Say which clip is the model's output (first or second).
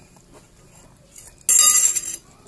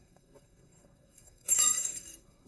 second